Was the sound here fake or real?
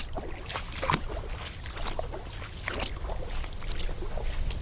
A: real